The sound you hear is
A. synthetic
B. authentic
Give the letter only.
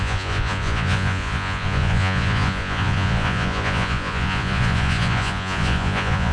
A